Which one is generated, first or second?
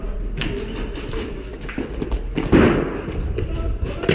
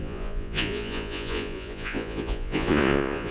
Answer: second